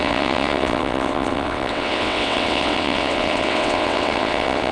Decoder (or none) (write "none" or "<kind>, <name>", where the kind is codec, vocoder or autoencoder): vocoder, WaveNeXt